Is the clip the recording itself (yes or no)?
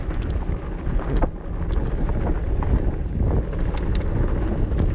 yes